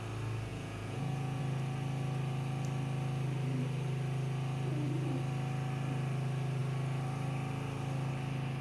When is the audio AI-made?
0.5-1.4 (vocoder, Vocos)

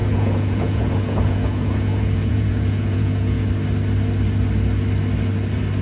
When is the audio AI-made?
0.0-3.5 (vocoder, Vocos)